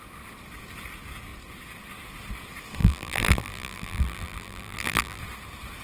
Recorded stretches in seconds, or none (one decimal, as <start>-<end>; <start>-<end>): 0.0-2.8; 5.2-5.8